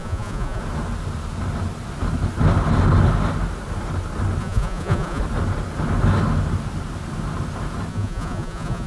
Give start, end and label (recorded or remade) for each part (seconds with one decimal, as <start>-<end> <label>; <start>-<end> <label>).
0.0-0.6 remade; 0.6-4.4 recorded; 4.4-5.2 remade; 5.2-7.9 recorded; 7.9-8.9 remade